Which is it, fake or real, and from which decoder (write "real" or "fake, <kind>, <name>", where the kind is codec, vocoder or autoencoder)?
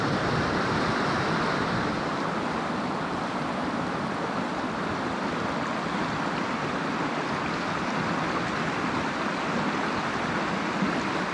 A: real